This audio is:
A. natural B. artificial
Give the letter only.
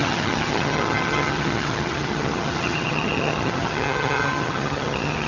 B